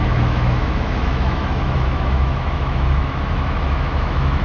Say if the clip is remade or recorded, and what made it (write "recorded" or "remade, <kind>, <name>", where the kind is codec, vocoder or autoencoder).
remade, autoencoder, DAC-VAE